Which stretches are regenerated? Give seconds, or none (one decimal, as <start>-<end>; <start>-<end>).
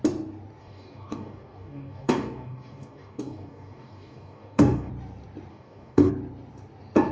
0.6-4.9; 5.5-6.1